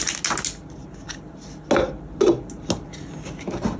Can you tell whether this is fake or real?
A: real